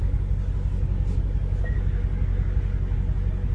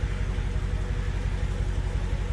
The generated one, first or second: first